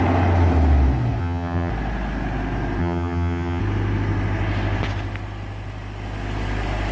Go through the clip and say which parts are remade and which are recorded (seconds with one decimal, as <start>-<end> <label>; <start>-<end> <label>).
0.0-1.2 recorded; 1.2-1.7 remade; 1.7-2.8 recorded; 2.8-3.6 remade; 3.6-6.9 recorded